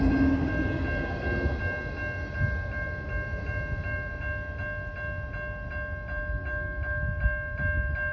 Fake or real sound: real